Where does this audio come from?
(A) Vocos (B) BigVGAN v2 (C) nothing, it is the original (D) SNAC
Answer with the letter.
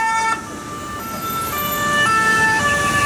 C